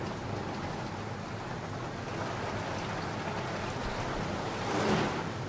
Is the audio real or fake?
real